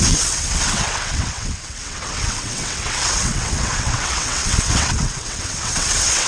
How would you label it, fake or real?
fake